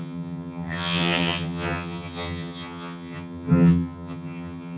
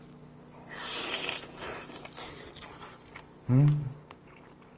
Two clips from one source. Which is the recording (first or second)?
second